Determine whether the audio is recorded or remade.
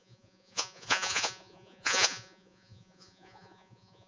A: remade